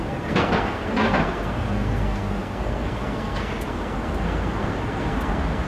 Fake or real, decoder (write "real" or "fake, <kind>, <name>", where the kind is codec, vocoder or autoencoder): fake, codec, SNAC